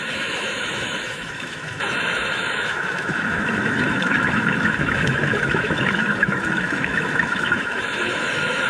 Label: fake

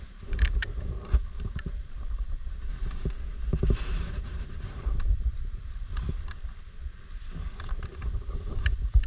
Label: fake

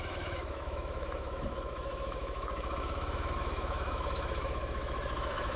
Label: fake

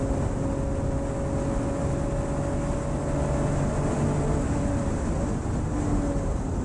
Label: real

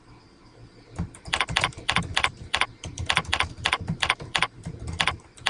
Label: fake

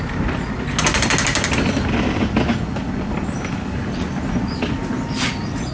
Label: real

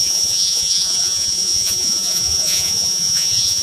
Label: fake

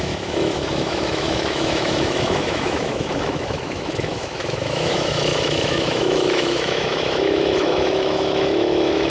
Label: fake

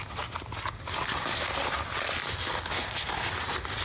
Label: real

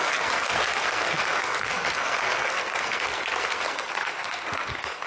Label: fake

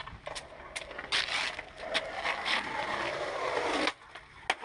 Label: real